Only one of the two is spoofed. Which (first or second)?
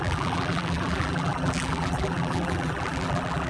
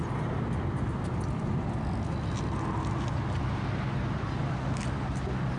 first